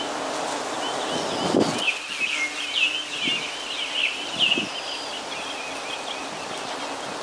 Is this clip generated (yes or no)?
no